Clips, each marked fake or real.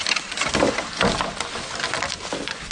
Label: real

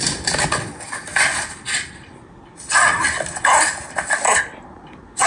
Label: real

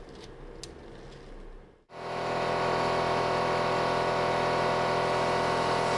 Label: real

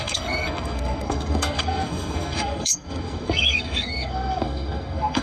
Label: fake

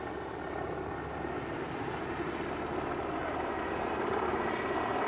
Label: real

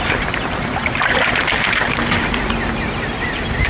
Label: fake